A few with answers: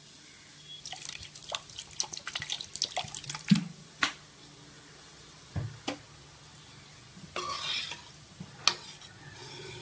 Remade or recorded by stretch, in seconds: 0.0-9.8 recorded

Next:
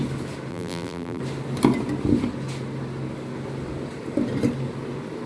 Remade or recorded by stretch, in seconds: 0.0-0.5 recorded; 0.5-1.2 remade; 1.2-5.3 recorded

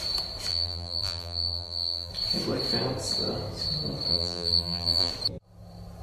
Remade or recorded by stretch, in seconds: 0.0-0.5 recorded; 0.5-2.1 remade; 2.1-4.1 recorded; 4.1-5.1 remade; 5.1-6.0 recorded

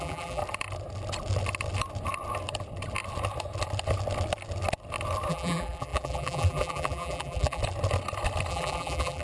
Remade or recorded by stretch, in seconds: 0.0-0.4 remade; 0.4-5.3 recorded; 5.3-7.6 remade; 7.6-8.5 recorded; 8.5-9.2 remade